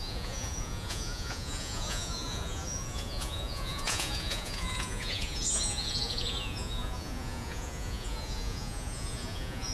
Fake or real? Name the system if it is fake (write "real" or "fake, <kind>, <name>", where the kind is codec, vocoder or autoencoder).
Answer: fake, vocoder, Vocos